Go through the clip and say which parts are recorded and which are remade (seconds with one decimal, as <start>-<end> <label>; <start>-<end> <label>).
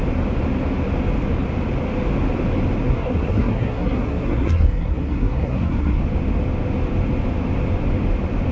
0.0-2.8 recorded; 2.8-6.0 remade; 6.0-8.5 recorded